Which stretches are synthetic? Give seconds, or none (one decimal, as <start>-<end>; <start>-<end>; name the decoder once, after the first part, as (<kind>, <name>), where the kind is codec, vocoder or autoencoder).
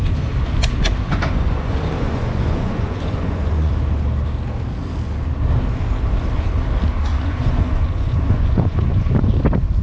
1.1-3.7 (vocoder, Vocos); 7.1-9.3